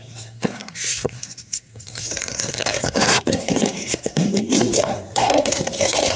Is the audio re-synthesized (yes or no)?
yes